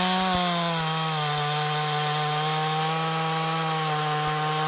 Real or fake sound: real